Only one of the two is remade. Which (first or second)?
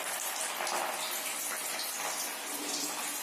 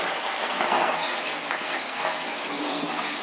second